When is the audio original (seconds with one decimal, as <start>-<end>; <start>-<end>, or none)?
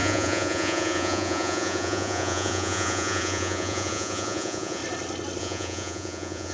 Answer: 4.8-5.4